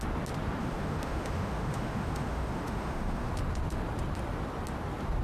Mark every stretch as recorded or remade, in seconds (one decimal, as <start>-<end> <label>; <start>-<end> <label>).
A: 0.0-0.6 recorded; 0.6-3.3 remade; 3.3-5.2 recorded